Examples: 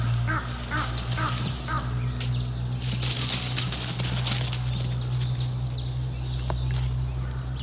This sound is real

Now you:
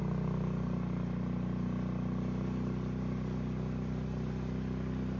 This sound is real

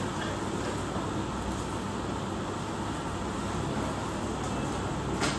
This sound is real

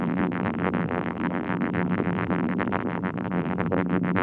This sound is fake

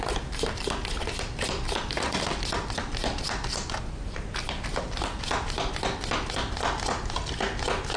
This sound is real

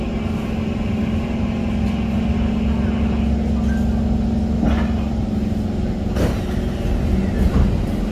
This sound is real